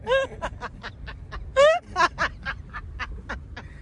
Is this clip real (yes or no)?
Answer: yes